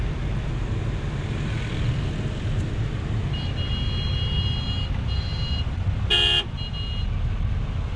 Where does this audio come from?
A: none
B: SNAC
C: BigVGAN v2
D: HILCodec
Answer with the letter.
A